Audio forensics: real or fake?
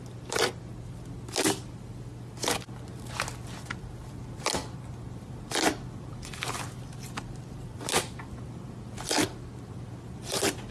real